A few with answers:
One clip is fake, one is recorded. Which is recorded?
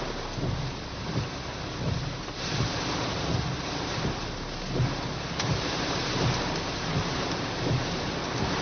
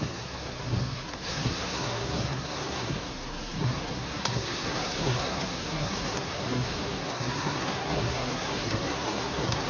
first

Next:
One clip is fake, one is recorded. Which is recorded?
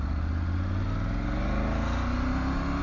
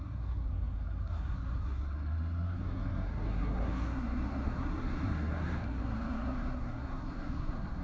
first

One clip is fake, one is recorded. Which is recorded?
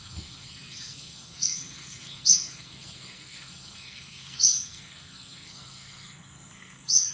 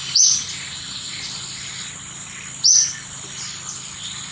second